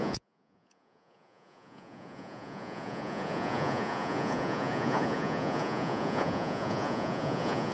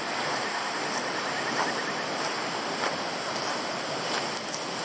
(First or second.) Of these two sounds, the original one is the second